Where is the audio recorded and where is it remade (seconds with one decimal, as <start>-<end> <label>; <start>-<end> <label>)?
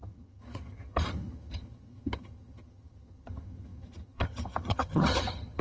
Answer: 0.0-5.6 remade